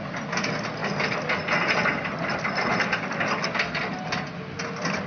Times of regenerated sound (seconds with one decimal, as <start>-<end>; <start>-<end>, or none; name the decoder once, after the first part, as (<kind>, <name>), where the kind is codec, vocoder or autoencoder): none

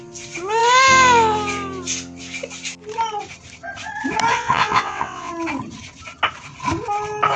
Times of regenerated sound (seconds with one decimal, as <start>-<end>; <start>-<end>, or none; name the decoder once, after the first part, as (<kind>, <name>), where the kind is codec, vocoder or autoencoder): 4.3-5.3 (vocoder, WaveNeXt)

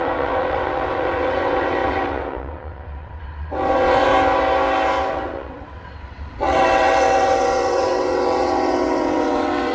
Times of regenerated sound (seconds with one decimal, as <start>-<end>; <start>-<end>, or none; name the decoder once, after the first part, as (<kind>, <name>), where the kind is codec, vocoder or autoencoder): 0.0-4.1 (vocoder, WaveNeXt); 5.1-9.7

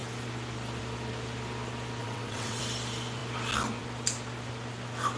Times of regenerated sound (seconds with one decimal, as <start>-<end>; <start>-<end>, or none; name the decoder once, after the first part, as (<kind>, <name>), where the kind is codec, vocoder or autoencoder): 2.0-2.6 (vocoder, WaveNeXt)

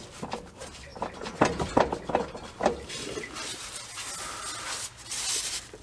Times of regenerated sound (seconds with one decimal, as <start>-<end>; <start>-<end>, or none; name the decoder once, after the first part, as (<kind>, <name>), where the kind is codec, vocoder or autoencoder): none

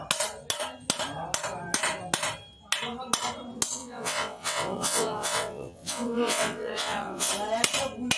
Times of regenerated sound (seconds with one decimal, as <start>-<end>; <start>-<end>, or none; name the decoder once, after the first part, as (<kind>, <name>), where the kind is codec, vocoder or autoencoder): 3.8-7.3 (vocoder, WaveNeXt)